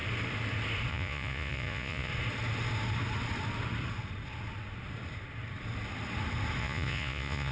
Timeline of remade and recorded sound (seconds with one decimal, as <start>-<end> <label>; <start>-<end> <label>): 0.0-0.9 recorded; 0.9-2.1 remade; 2.1-6.6 recorded; 6.6-7.5 remade